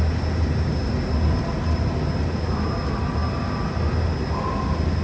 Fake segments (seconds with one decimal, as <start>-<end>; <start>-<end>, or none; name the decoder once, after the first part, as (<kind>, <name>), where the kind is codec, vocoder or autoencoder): none